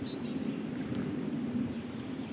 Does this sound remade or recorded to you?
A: recorded